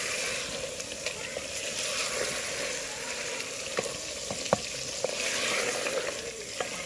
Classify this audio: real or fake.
real